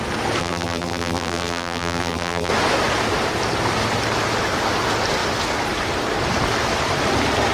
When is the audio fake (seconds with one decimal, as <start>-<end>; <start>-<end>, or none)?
0.4-2.5